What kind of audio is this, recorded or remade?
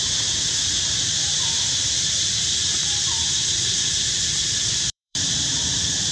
remade